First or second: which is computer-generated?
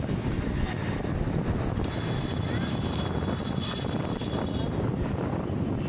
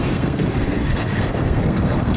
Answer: second